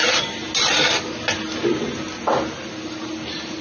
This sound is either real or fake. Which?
real